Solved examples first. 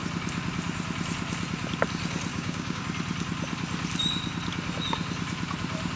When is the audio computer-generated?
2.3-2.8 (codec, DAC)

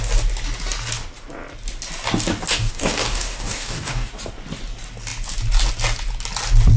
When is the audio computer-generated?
2.5-4.1 (codec, DAC)

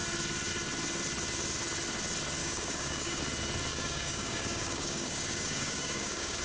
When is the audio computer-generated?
2.4-3.2 (codec, DAC); 3.7-6.4

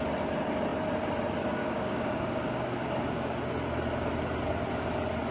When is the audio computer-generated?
1.6-3.3 (codec, DAC)

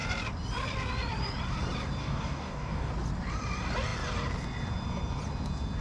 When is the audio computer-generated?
2.0-2.9 (codec, DAC)